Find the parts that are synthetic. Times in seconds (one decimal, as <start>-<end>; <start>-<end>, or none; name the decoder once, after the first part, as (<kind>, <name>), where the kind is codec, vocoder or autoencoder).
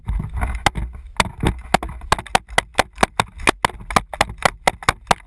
none